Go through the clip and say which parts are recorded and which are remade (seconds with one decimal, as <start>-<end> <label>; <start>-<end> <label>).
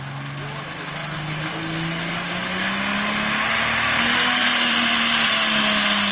0.0-4.4 recorded; 4.4-5.3 remade; 5.3-6.1 recorded